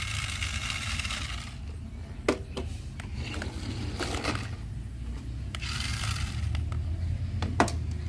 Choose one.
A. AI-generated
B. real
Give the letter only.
B